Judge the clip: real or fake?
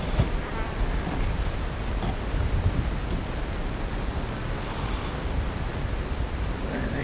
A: real